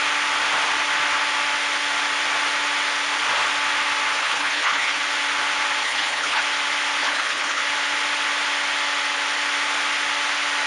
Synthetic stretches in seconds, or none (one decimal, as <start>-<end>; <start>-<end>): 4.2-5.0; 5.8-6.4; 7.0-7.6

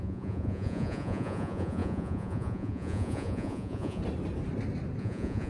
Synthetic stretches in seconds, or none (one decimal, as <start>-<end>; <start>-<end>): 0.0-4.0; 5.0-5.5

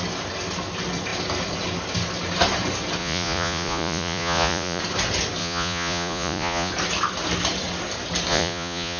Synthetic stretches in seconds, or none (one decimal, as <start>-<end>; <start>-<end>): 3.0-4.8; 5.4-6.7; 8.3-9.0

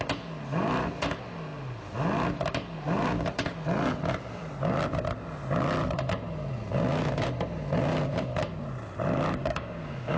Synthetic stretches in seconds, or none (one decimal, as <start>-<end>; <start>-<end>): 9.4-10.2